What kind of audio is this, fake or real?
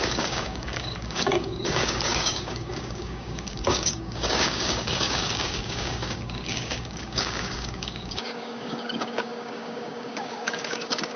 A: fake